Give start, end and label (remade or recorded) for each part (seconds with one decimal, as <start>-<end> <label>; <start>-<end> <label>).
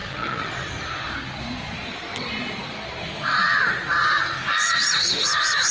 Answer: 0.0-0.7 remade; 0.7-5.7 recorded